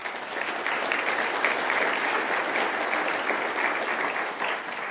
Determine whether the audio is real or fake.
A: real